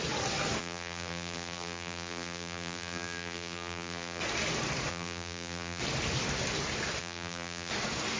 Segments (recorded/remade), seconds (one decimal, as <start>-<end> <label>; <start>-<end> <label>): 0.0-0.6 recorded; 0.6-4.2 remade; 4.2-4.9 recorded; 4.9-5.8 remade; 5.8-7.0 recorded; 7.0-7.7 remade; 7.7-8.2 recorded